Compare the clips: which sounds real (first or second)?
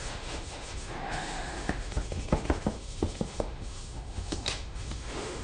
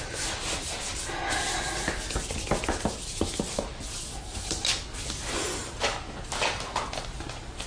second